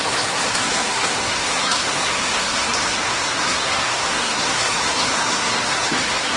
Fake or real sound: fake